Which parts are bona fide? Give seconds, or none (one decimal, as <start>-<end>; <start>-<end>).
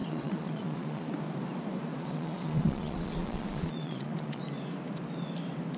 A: 1.1-1.9; 4.4-5.8